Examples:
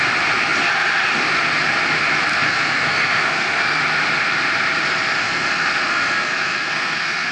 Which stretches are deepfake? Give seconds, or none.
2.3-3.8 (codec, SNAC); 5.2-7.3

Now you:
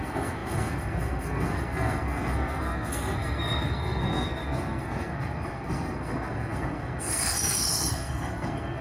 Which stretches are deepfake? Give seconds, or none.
0.0-8.8 (codec, SNAC)